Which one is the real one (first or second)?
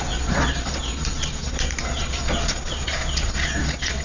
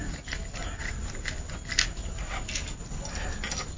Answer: second